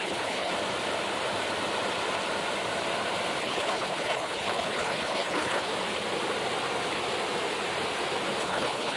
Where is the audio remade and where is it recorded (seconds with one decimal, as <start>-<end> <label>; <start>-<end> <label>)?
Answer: 0.0-0.5 remade; 0.5-3.4 recorded; 3.4-5.7 remade; 5.7-8.4 recorded; 8.4-9.0 remade